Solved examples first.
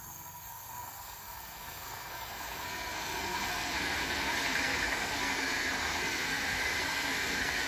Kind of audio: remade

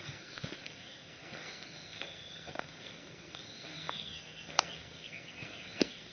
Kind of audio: remade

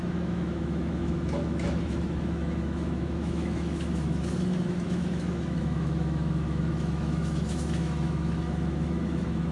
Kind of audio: remade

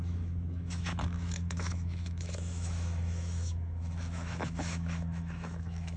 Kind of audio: remade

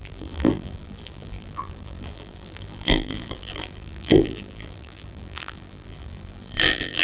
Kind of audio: remade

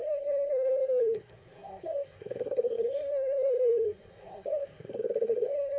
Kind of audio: remade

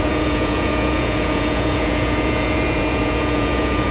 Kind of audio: remade